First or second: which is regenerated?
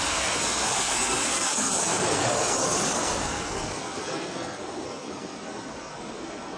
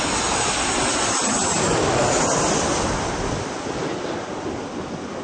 first